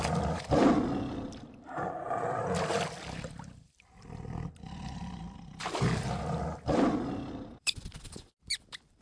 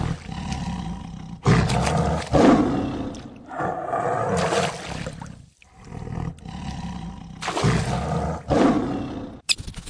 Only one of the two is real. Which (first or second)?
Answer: second